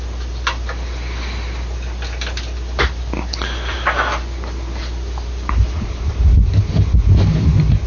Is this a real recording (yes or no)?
yes